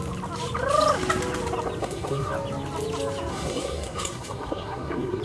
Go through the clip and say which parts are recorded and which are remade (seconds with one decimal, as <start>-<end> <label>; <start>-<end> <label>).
0.0-1.8 recorded; 1.8-2.3 remade; 2.3-3.3 recorded; 3.3-5.2 remade